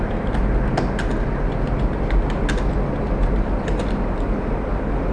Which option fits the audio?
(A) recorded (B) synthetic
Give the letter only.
A